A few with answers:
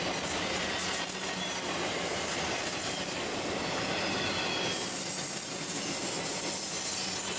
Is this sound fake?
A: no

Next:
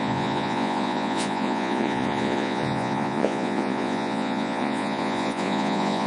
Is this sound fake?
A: yes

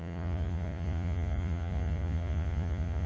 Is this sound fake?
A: yes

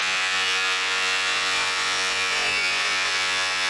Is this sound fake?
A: yes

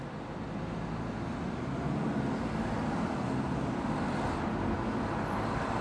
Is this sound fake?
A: no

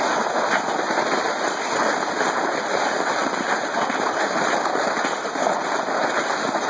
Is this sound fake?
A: no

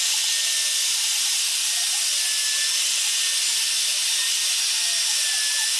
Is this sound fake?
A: no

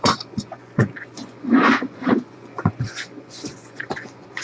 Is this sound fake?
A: yes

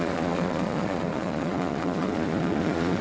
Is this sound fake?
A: yes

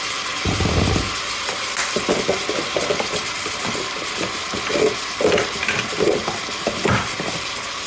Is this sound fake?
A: no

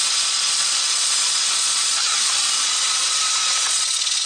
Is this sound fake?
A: yes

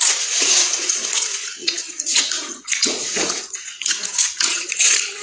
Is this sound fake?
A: yes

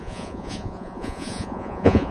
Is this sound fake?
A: yes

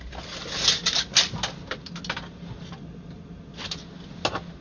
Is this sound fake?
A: no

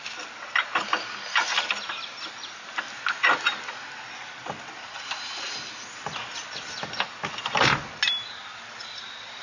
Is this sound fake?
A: no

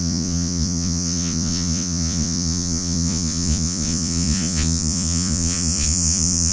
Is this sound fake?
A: yes